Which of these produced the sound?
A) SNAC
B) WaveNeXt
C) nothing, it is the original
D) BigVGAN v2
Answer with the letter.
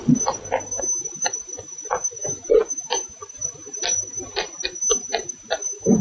C